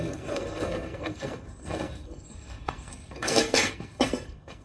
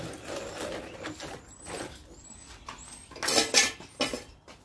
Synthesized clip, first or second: first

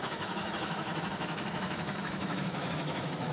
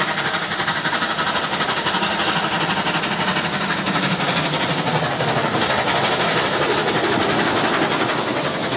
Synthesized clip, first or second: first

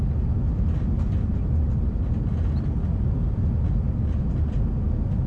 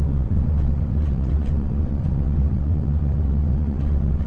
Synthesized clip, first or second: second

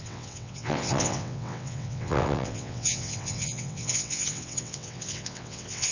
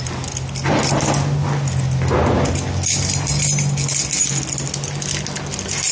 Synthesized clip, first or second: first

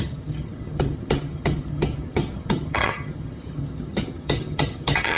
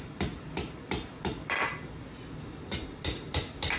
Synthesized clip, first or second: first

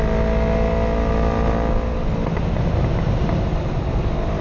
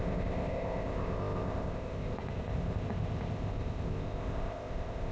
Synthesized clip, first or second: second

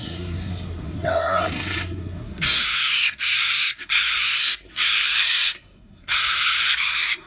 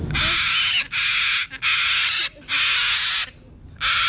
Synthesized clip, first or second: first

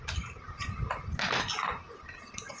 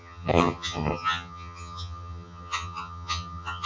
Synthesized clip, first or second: second